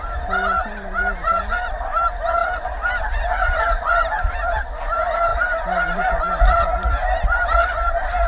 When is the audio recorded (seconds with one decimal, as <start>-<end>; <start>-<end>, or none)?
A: none